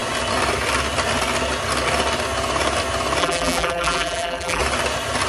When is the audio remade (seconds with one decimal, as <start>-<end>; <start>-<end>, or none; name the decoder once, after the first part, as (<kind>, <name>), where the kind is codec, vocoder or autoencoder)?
3.2-4.6 (vocoder, BigVGAN v2)